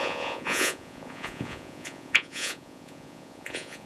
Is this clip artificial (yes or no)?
yes